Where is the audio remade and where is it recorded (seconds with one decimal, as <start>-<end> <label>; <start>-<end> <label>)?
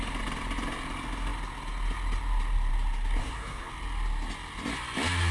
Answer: 0.0-3.2 recorded; 3.2-3.7 remade; 3.7-5.3 recorded